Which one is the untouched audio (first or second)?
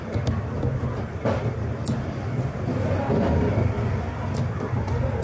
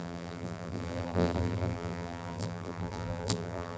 first